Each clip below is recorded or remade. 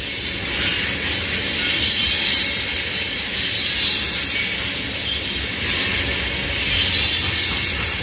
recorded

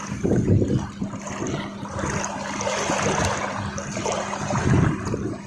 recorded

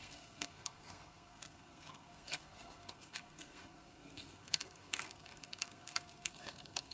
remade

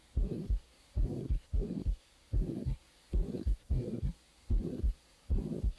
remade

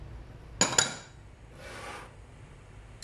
recorded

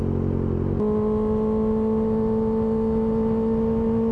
recorded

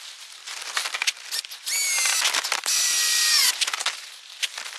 recorded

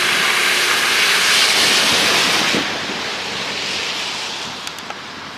recorded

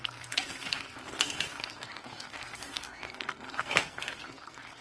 remade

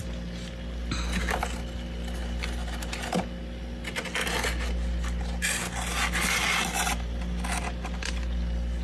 recorded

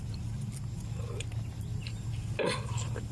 recorded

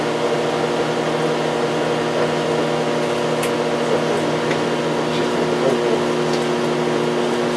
recorded